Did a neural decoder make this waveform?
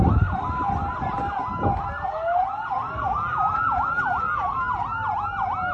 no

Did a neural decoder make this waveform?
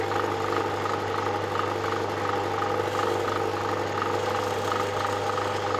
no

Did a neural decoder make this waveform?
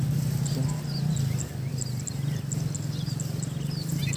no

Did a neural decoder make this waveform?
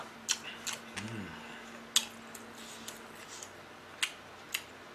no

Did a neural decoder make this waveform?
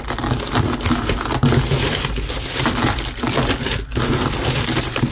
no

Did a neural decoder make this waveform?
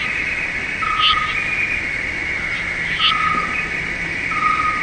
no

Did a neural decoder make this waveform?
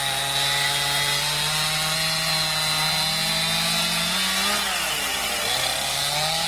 no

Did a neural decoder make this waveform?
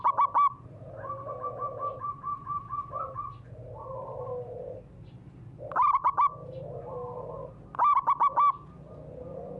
no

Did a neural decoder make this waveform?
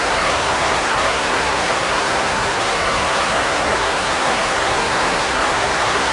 yes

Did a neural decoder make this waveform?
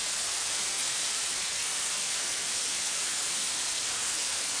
yes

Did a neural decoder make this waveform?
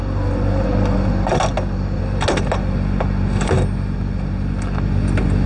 no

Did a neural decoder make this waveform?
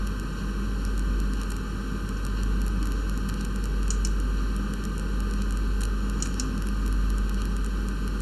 no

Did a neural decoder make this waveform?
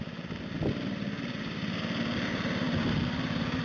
no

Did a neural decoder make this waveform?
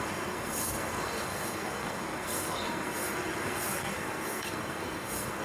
yes